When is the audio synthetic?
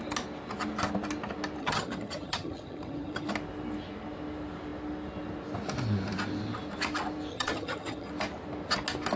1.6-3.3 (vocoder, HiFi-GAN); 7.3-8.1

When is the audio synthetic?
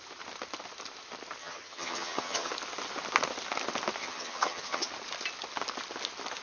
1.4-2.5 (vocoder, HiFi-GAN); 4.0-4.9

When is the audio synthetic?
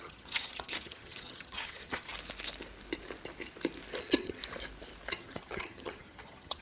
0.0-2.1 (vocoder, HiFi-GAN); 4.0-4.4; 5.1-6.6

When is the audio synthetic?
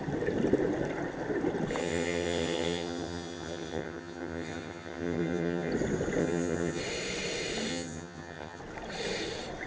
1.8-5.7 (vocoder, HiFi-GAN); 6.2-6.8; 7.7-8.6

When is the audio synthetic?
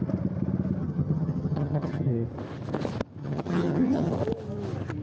0.8-2.1 (vocoder, HiFi-GAN); 3.2-4.1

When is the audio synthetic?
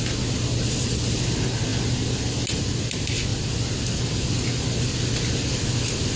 none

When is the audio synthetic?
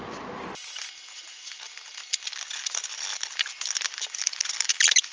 none